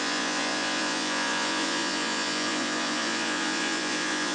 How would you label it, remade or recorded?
remade